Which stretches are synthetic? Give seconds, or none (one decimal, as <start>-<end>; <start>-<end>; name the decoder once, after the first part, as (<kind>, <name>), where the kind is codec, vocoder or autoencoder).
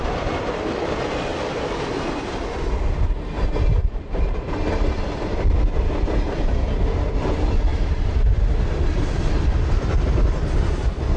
1.3-2.3 (vocoder, BigVGAN v2); 7.7-8.5